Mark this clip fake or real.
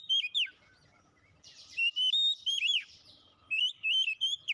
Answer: real